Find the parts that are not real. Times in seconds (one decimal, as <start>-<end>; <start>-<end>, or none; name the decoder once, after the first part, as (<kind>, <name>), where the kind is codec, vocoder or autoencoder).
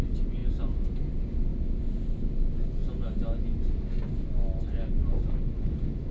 none